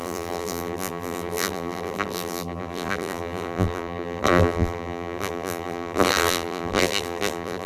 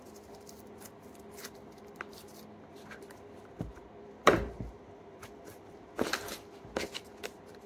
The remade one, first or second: first